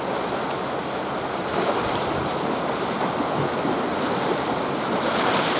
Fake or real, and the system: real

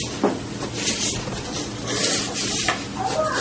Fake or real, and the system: real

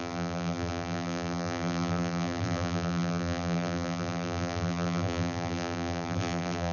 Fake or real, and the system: fake, vocoder, BigVGAN v2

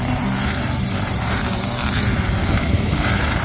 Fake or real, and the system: fake, vocoder, BigVGAN v2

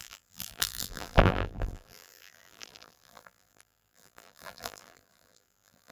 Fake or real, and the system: fake, vocoder, BigVGAN v2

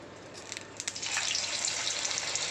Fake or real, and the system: real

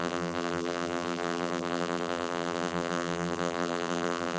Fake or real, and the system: fake, vocoder, BigVGAN v2